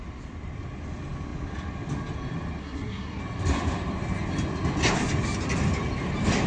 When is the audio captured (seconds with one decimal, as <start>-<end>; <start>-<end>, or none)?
0.0-2.6; 3.2-6.5